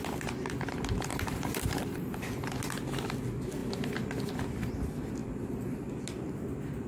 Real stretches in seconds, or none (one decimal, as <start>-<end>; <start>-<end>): 0.0-1.1; 2.3-6.9